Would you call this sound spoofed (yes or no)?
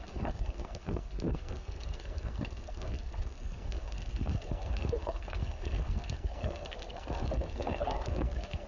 yes